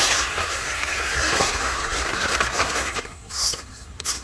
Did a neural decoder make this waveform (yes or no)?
yes